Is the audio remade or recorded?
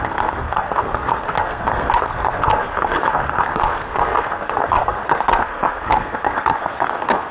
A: remade